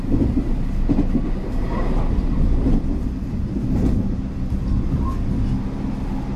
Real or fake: real